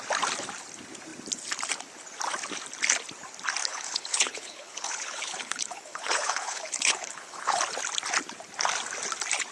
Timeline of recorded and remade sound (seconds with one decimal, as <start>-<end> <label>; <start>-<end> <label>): 0.0-3.6 recorded; 3.6-7.6 remade; 7.6-9.5 recorded